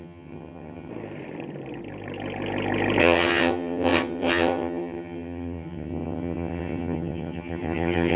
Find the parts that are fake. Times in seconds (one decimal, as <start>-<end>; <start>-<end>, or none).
0.0-0.9; 3.0-8.2